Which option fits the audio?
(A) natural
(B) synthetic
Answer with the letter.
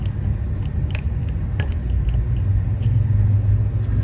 A